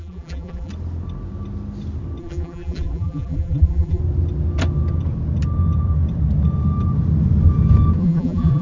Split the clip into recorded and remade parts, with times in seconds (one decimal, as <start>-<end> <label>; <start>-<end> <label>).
0.0-0.7 remade; 0.7-2.2 recorded; 2.2-4.0 remade; 4.0-8.0 recorded; 8.0-8.6 remade